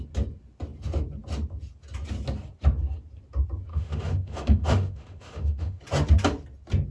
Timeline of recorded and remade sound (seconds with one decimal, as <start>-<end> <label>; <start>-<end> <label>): 0.0-3.7 recorded; 3.7-5.8 remade; 5.8-6.9 recorded